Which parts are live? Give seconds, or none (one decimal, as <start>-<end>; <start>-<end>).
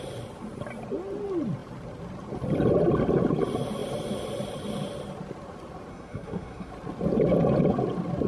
0.0-5.9; 6.7-8.3